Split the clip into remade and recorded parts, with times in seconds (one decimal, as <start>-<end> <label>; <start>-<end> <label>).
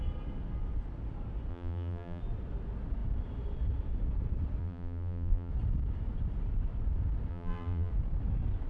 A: 0.0-1.5 recorded; 1.5-2.2 remade; 2.2-4.6 recorded; 4.6-5.5 remade; 5.5-7.3 recorded; 7.3-7.9 remade; 7.9-8.7 recorded